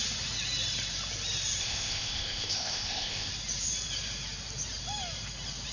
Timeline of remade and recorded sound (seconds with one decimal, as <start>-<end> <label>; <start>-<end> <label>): 0.0-1.6 recorded; 1.6-3.3 remade; 3.3-5.7 recorded